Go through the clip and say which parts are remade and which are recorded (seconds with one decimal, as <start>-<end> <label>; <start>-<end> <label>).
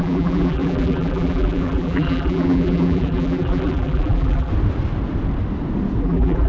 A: 0.0-4.5 remade; 4.5-6.0 recorded; 6.0-6.5 remade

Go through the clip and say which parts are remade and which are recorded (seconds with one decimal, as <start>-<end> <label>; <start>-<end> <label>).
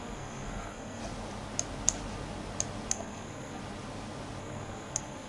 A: 0.0-1.0 remade; 1.0-2.9 recorded; 2.9-3.6 remade; 3.6-4.4 recorded; 4.4-5.3 remade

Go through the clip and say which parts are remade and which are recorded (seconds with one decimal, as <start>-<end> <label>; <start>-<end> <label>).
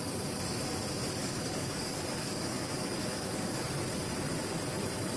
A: 0.0-1.2 recorded; 1.2-3.6 remade; 3.6-5.2 recorded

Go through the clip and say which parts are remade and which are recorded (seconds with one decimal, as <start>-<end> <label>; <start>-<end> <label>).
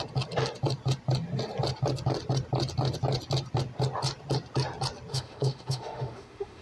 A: 0.0-5.1 recorded; 5.1-6.6 remade